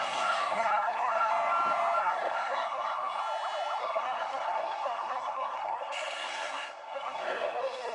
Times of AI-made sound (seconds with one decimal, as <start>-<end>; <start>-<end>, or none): 0.0-1.3; 2.0-3.2; 3.8-7.9